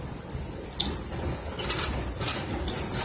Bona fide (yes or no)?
yes